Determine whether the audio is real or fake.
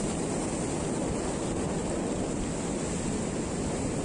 real